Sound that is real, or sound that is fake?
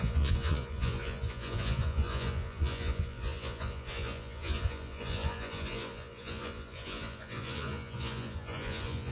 fake